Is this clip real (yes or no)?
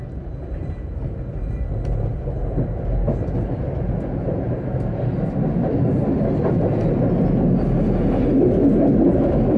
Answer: yes